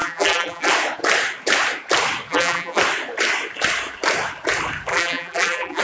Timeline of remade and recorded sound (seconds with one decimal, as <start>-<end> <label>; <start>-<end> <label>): 0.0-0.7 remade; 0.7-2.3 recorded; 2.3-2.8 remade; 2.8-4.9 recorded; 4.9-5.8 remade